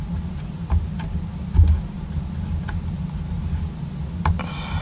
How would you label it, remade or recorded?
recorded